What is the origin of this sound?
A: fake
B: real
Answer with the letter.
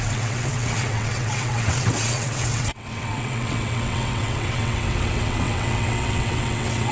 A